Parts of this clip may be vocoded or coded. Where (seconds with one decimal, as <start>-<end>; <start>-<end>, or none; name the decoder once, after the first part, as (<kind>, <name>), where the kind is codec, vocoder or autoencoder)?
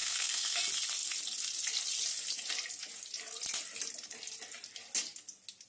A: 0.0-0.6 (codec, SNAC)